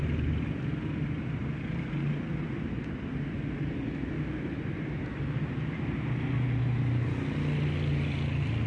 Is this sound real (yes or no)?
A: yes